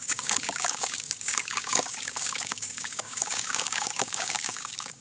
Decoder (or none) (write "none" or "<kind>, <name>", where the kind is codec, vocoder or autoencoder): codec, DAC